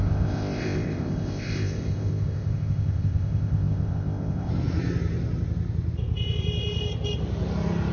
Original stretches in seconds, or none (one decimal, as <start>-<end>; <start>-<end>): 4.5-7.9